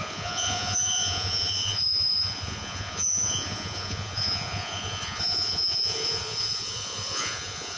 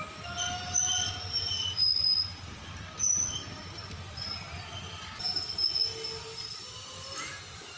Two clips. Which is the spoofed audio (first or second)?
first